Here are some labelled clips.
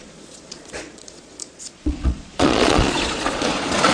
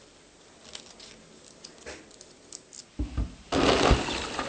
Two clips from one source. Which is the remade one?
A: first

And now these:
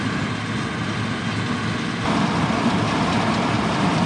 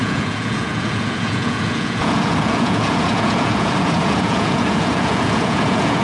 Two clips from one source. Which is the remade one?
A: second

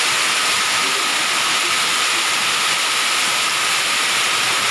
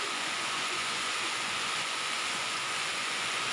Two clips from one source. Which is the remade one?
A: second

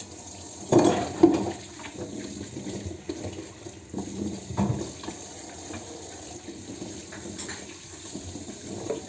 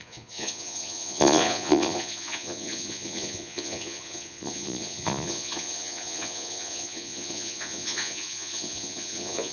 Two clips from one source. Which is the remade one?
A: second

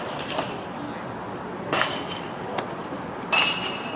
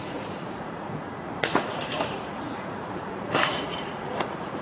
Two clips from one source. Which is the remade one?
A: second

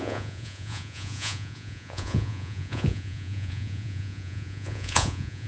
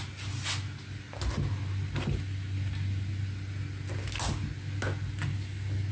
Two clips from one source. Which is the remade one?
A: first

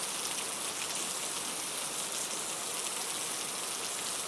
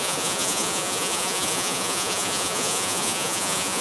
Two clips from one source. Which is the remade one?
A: second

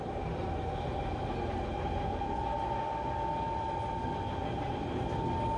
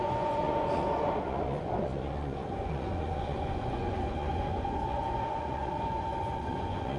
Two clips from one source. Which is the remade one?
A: second